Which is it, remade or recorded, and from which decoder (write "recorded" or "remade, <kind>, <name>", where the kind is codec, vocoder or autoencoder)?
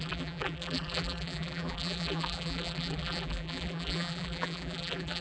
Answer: remade, vocoder, BigVGAN v2